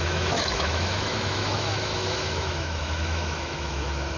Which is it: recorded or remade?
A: remade